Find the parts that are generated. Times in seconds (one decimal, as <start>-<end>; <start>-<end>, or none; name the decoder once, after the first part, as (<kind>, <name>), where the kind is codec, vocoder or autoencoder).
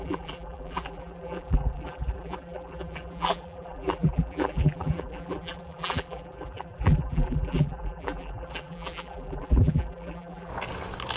0.0-10.5 (vocoder, BigVGAN v2)